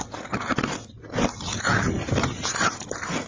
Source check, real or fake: real